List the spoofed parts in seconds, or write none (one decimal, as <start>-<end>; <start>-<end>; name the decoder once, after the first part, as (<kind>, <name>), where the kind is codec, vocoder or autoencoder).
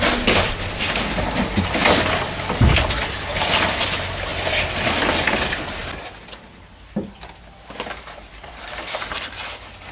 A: 4.3-4.9 (vocoder, BigVGAN v2)